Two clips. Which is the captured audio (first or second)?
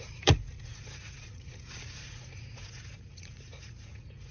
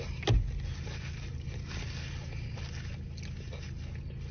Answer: second